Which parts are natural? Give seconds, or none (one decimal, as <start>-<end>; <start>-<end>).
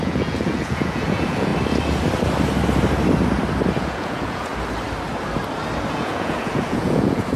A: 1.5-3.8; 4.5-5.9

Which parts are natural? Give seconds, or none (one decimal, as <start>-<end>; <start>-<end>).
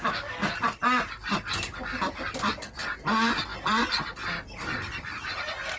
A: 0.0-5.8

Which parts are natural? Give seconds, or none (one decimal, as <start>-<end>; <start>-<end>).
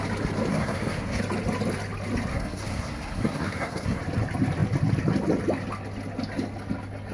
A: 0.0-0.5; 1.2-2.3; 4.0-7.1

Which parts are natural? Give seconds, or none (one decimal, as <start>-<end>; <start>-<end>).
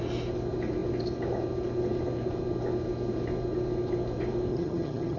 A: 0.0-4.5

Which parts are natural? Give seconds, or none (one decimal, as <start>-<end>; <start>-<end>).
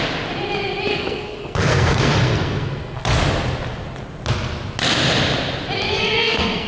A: 0.0-0.9; 3.1-5.9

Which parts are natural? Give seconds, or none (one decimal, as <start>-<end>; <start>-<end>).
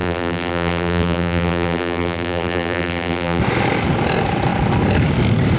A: 3.4-5.6